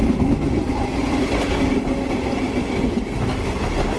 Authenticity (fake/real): real